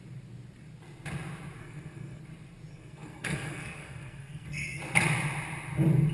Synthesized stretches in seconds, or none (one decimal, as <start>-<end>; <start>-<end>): 1.6-2.2; 2.7-4.8